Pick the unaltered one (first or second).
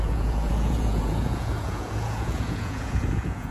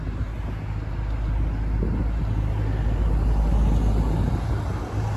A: second